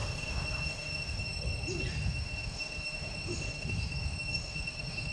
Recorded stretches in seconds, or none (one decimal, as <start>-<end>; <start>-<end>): 1.2-1.9